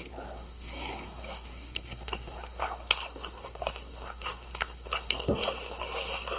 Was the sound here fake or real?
fake